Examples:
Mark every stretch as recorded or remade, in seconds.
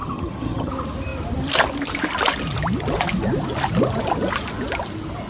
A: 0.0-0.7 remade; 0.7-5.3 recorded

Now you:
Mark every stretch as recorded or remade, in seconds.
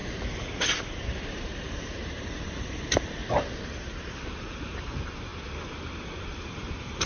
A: 0.0-3.2 remade; 3.2-3.8 recorded; 3.8-5.3 remade; 5.3-6.2 recorded; 6.2-7.1 remade